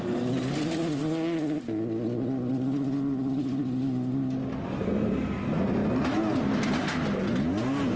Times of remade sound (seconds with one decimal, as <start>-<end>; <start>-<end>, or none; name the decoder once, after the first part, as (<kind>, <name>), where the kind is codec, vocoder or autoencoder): none